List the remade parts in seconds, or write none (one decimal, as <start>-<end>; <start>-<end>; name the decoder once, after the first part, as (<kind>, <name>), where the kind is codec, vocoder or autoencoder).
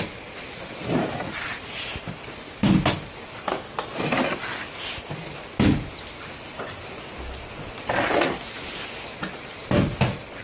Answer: none